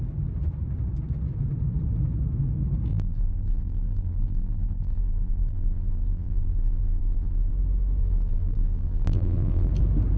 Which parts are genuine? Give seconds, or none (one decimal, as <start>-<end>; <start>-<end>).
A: 0.0-2.9; 7.5-8.0; 9.7-10.2